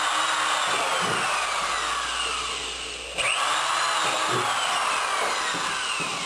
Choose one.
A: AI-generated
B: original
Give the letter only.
B